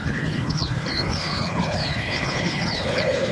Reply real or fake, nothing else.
fake